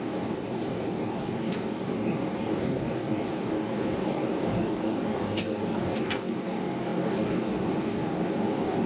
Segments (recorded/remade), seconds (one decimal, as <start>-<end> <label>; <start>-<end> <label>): 0.0-8.9 remade